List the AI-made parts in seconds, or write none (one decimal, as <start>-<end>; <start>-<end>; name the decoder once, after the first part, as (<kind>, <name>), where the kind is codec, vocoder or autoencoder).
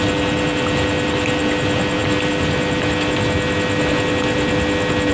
none